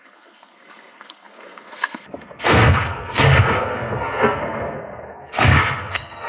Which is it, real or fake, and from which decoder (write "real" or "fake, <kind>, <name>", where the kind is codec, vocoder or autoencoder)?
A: fake, codec, SNAC